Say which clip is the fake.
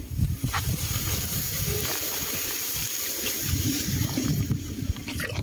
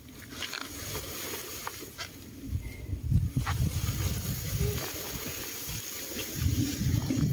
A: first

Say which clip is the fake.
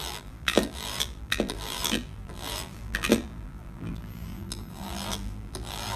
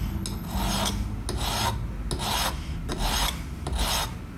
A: first